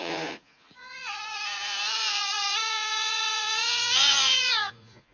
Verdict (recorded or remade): remade